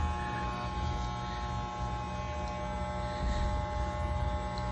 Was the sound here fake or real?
real